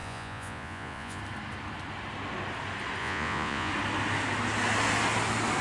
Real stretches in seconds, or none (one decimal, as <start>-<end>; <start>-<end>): 1.2-3.0; 3.7-5.6